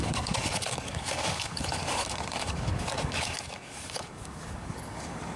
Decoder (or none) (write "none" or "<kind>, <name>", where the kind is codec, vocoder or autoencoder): codec, DAC